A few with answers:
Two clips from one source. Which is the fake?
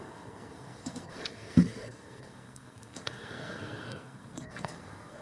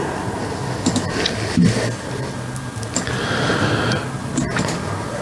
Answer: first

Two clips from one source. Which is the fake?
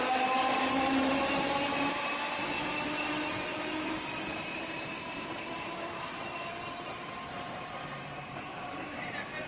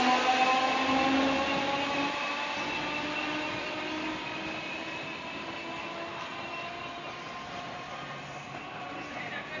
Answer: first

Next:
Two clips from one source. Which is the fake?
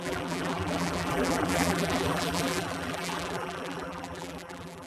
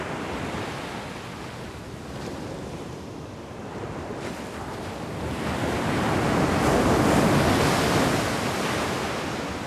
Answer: first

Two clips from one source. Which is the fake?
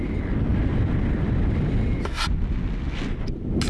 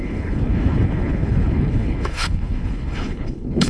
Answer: second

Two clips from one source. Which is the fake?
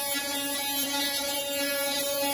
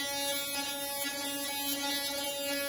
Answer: first